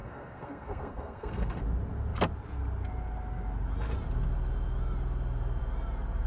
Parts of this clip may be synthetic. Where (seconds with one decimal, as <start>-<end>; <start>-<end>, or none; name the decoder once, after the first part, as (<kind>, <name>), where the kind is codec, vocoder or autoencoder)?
0.0-1.6 (codec, SNAC)